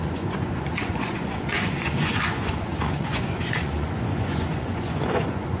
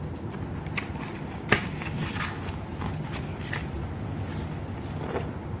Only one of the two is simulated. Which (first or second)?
first